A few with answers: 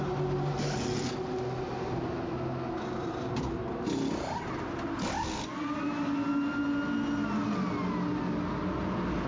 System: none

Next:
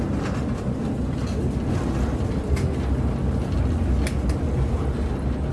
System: none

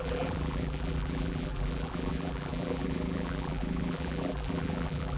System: vocoder, BigVGAN v2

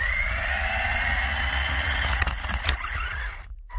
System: vocoder, Vocos